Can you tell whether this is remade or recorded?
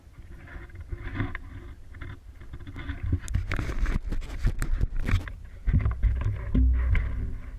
recorded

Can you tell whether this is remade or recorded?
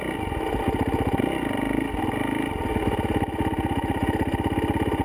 recorded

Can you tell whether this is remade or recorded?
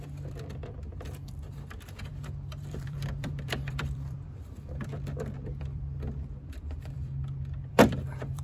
remade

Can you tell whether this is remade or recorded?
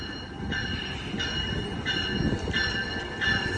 recorded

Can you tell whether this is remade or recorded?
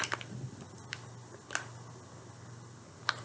recorded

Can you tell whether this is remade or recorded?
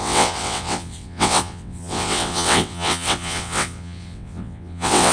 remade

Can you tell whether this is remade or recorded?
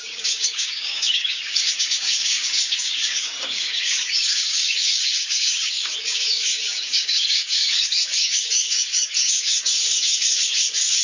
remade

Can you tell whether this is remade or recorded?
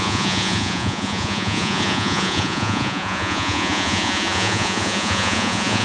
remade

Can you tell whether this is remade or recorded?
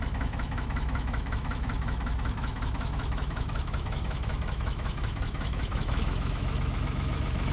remade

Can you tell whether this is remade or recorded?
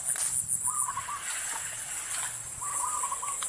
recorded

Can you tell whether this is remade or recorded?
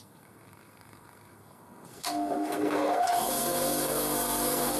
remade